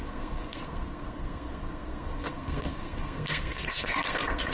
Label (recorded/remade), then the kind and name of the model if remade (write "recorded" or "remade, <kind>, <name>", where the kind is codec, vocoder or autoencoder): remade, codec, SNAC